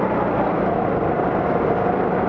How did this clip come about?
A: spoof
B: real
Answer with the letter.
B